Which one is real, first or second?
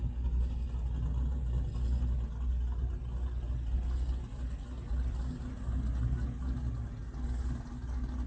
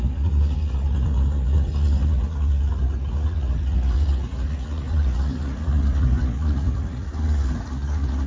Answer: first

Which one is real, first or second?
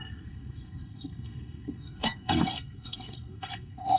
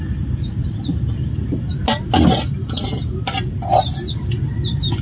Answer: second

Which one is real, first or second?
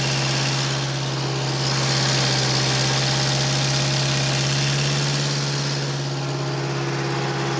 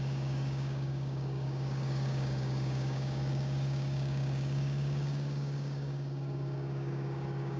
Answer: first